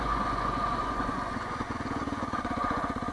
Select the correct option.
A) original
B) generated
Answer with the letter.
B